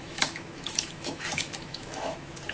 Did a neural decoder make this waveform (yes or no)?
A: yes